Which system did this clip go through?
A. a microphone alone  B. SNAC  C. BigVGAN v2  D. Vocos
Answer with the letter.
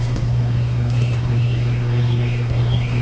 B